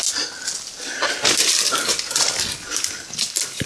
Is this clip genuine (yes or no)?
yes